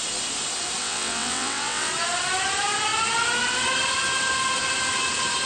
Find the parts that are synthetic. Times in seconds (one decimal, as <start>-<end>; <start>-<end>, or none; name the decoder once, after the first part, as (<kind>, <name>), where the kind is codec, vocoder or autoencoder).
0.8-1.9 (vocoder, WaveNeXt)